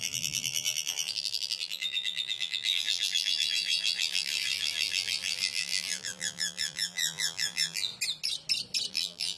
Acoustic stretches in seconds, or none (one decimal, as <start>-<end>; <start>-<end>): 7.9-8.9